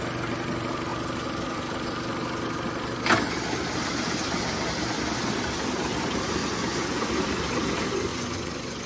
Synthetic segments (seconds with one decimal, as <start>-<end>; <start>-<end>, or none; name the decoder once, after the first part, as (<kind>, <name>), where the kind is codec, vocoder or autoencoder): 6.4-7.1 (vocoder, Vocos); 8.1-8.9

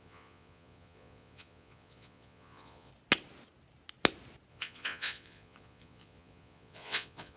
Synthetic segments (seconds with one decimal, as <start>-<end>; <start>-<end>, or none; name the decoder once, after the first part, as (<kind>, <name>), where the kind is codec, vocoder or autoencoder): 0.0-2.9 (vocoder, Vocos); 4.5-7.4

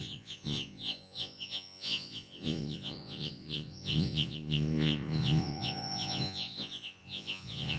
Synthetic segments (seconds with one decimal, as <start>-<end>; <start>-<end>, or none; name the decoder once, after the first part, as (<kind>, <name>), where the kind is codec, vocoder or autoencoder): 0.0-7.8 (vocoder, Vocos)

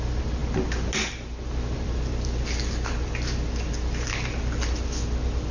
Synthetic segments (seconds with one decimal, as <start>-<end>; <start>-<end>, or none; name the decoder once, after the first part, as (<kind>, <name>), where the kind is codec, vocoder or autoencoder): none

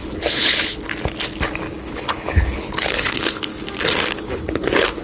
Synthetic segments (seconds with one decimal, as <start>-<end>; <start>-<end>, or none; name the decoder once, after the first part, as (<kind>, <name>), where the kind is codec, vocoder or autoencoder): 0.0-0.9 (codec, HILCodec); 1.8-3.5; 4.1-5.0

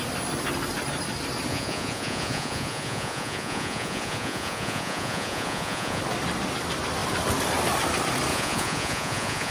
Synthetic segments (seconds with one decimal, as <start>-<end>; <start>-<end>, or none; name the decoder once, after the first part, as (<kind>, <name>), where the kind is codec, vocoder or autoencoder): 1.5-6.0 (vocoder, Vocos); 8.3-9.5